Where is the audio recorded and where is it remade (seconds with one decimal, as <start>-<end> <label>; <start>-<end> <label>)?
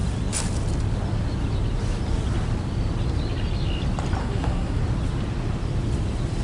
0.0-4.2 recorded; 4.2-4.8 remade; 4.8-6.4 recorded